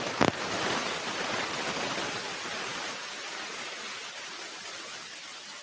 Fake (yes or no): yes